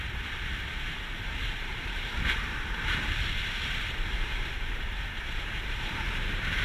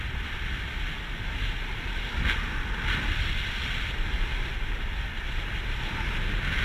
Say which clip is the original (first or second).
second